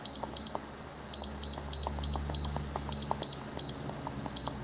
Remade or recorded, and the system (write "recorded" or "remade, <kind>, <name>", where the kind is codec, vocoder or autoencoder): recorded